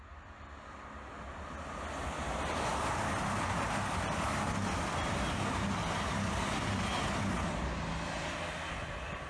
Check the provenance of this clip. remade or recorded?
recorded